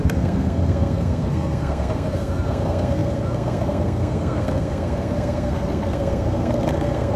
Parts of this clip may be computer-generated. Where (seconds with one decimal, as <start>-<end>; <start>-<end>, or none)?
0.0-7.2